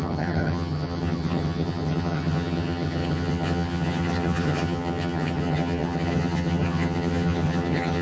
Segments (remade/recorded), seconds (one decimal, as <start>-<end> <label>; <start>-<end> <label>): 0.0-8.0 remade